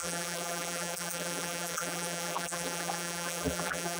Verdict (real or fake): fake